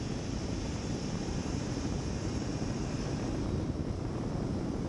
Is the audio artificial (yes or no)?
yes